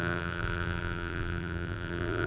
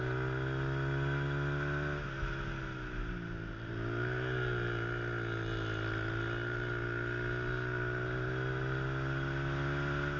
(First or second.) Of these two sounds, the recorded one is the second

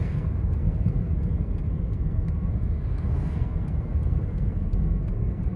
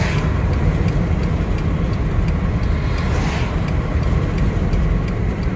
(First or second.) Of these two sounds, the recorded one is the second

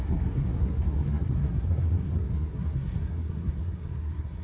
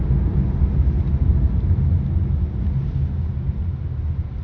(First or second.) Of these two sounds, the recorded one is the second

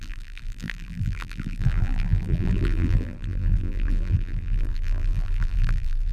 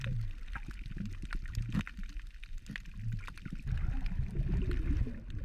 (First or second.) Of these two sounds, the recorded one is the second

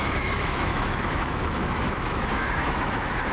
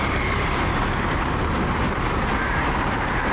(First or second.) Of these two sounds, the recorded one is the second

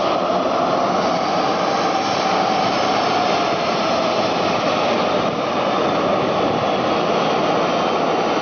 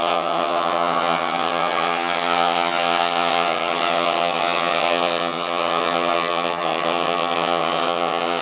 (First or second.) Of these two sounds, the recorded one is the first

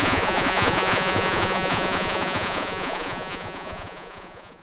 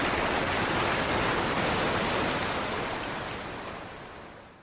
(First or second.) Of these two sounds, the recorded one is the second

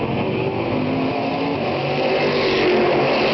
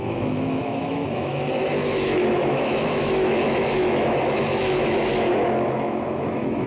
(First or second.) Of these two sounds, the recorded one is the first